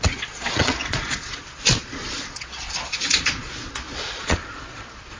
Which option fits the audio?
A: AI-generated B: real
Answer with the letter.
A